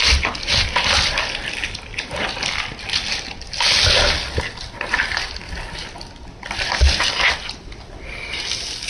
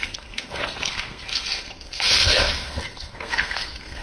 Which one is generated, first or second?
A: second